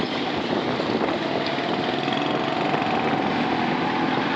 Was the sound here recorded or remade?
recorded